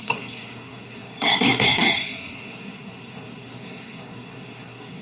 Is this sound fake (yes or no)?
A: yes